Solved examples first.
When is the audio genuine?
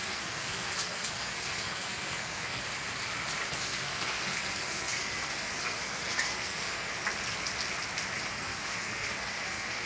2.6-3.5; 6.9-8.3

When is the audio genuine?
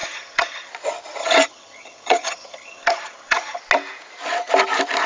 0.7-1.2; 3.6-5.1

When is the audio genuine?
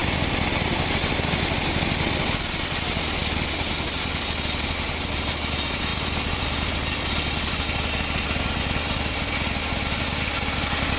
0.0-5.9; 7.6-11.0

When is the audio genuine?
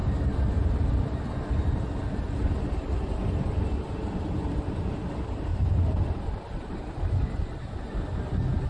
0.0-5.5; 6.9-8.7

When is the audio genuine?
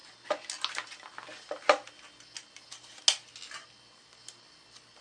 0.0-5.0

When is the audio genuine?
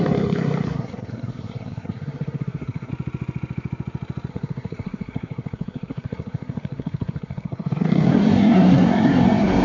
2.9-4.3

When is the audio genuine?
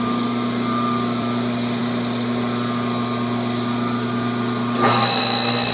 0.0-5.7